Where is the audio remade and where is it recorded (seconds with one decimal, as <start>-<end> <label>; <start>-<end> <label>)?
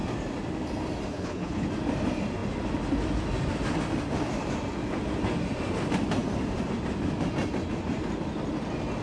0.0-1.1 recorded; 1.1-1.7 remade; 1.7-9.0 recorded